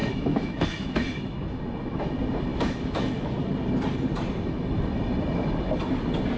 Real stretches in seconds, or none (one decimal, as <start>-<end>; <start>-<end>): 1.6-2.5; 3.3-6.4